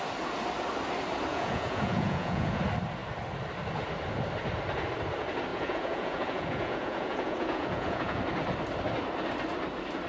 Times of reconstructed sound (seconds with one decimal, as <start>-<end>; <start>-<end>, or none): 1.3-2.6; 5.5-8.2